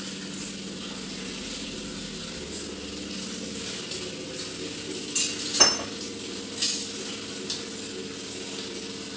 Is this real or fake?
real